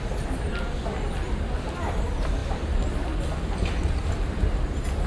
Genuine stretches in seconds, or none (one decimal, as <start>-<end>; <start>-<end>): 0.0-5.1